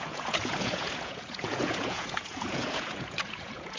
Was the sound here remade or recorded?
remade